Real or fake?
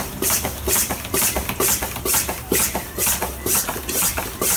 fake